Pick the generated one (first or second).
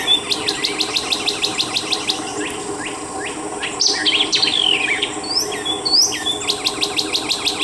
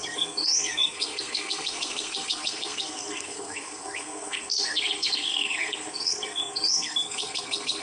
second